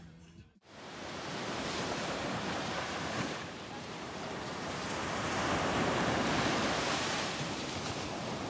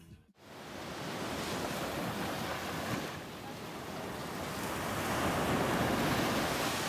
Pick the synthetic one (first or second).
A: first